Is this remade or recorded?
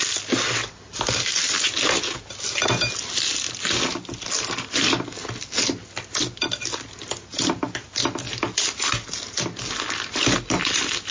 recorded